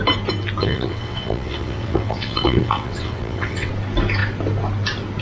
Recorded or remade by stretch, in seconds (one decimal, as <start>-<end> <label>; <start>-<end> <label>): 0.0-0.6 recorded; 0.6-3.7 remade; 3.7-5.2 recorded